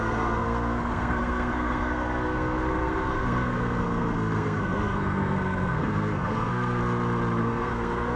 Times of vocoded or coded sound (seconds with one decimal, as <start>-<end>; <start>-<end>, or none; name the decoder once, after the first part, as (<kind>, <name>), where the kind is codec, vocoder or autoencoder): 0.0-6.8 (codec, SNAC); 7.4-8.2